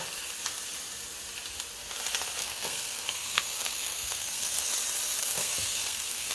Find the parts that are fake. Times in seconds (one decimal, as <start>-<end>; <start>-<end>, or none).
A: 2.4-4.7; 5.2-6.3